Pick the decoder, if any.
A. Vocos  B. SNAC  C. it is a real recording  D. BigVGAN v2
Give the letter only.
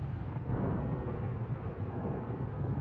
B